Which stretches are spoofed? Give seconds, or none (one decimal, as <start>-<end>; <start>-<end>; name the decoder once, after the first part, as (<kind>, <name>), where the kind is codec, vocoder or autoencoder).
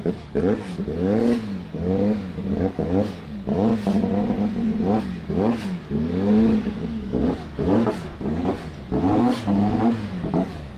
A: 0.0-3.7 (codec, DAC); 5.0-8.6; 9.2-10.8